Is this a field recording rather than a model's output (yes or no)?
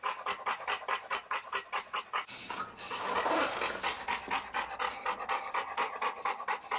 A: yes